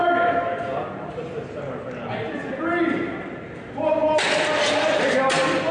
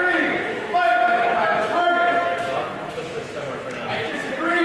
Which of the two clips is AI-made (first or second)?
second